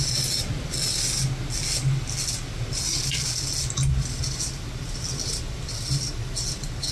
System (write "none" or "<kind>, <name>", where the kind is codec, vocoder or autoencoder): none